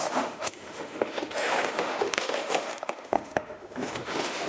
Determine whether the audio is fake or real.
fake